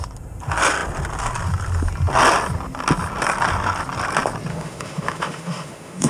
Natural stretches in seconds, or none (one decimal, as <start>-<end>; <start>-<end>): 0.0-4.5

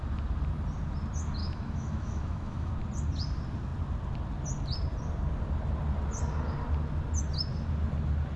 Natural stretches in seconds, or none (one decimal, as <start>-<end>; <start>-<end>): 0.0-1.4; 2.7-8.4

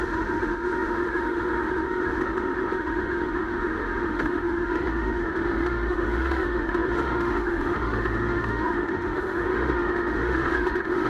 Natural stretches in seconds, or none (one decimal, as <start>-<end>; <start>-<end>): none

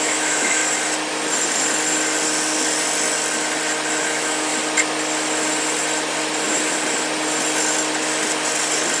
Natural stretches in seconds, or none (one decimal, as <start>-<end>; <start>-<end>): 0.6-4.0; 4.5-9.0